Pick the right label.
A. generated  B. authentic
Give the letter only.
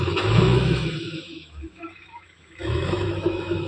A